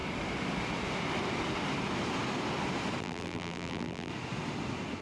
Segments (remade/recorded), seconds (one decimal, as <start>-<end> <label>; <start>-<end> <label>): 0.0-3.0 recorded; 3.0-4.1 remade; 4.1-5.0 recorded